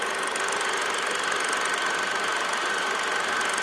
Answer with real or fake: real